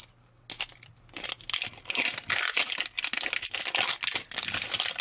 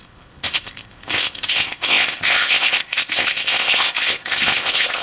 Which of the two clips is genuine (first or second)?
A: first